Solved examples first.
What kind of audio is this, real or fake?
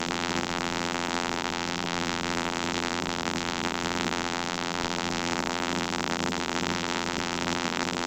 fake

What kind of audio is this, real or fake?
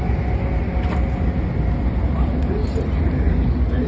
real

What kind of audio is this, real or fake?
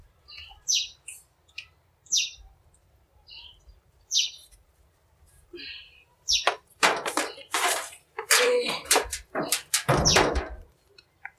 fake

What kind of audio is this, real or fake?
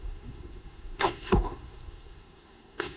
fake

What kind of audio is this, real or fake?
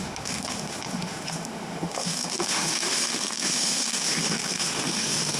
fake